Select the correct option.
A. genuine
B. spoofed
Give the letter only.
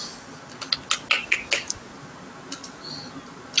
A